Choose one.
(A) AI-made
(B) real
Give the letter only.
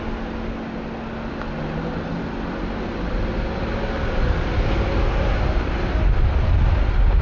B